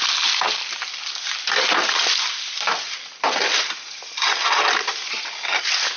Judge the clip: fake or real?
real